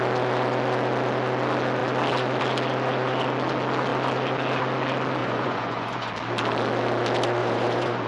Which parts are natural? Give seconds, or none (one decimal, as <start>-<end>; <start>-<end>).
0.0-5.2; 6.1-7.4